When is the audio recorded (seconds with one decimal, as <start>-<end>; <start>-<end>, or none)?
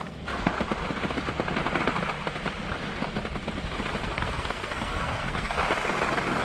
0.5-4.0; 5.6-6.4